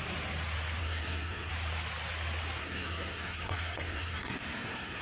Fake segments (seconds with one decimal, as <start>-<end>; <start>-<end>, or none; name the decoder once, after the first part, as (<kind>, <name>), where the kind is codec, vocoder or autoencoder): 0.8-1.5 (codec, SNAC); 2.6-5.0